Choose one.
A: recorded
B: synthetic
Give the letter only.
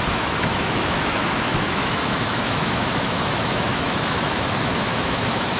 B